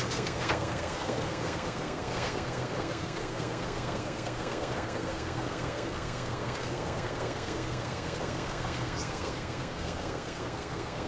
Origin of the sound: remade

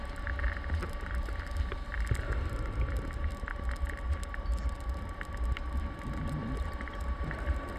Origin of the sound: recorded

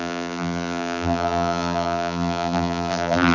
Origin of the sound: remade